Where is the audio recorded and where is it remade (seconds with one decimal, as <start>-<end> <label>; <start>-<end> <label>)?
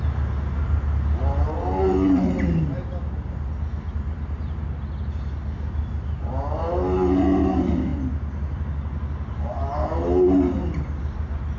0.0-11.6 recorded